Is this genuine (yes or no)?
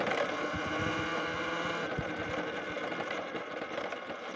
yes